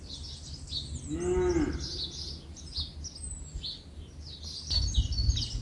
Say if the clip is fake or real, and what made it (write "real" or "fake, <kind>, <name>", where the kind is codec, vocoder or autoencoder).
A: real